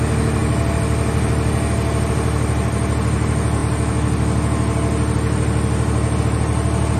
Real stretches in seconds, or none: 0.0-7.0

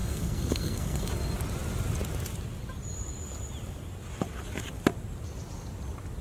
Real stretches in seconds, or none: 1.1-6.2

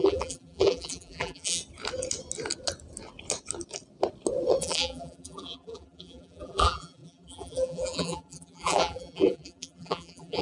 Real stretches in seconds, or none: 1.6-4.6